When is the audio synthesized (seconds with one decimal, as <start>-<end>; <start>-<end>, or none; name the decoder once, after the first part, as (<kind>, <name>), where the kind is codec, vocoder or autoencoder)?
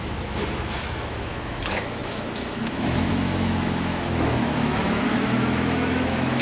0.0-6.4 (autoencoder, DAC-VAE)